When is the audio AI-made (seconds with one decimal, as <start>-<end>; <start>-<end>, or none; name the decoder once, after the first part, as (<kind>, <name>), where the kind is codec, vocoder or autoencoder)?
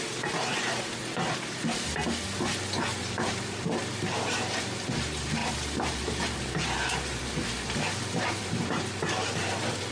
0.0-1.0 (vocoder, BigVGAN v2); 3.0-9.9